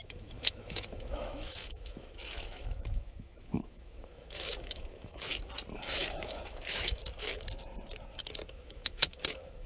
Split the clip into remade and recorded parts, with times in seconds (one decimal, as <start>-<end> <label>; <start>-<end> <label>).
0.0-5.3 remade; 5.3-5.9 recorded; 5.9-7.0 remade; 7.0-8.5 recorded; 8.5-9.7 remade